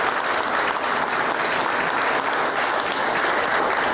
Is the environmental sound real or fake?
real